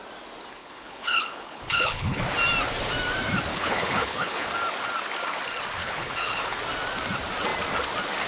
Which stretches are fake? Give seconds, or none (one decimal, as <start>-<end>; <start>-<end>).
0.6-2.2; 3.5-4.5; 5.8-6.6